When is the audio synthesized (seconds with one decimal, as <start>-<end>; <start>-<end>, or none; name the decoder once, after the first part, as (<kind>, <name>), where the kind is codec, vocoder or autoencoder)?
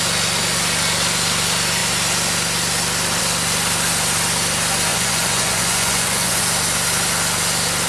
4.9-6.4 (vocoder, Vocos)